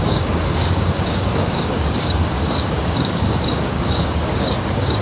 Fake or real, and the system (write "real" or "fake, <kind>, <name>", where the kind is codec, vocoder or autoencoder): fake, codec, DAC